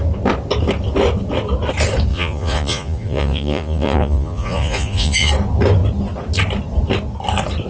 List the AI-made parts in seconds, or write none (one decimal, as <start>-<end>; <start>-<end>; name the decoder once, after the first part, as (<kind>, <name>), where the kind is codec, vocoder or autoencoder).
2.1-5.3 (vocoder, Vocos)